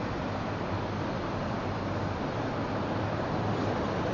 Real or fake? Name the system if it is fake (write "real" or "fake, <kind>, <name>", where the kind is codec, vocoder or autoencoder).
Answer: real